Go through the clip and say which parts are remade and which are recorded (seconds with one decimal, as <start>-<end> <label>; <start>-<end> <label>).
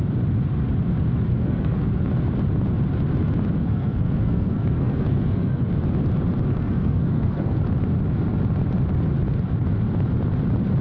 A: 0.0-1.3 recorded; 1.3-1.9 remade; 1.9-3.6 recorded; 3.6-5.6 remade; 5.6-6.5 recorded; 6.5-7.6 remade; 7.6-10.8 recorded